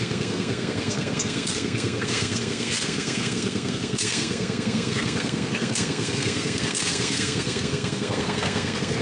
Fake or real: fake